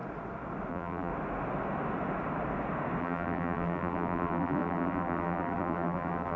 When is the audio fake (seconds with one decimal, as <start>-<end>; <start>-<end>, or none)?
0.7-1.1; 3.0-6.4